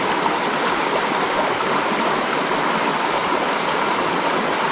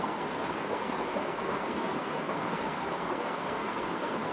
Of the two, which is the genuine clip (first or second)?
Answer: first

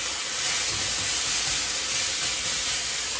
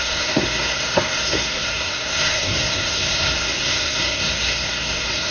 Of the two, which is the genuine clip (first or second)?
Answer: first